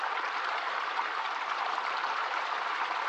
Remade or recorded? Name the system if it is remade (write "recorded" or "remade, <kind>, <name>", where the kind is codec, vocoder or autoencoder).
remade, vocoder, BigVGAN v2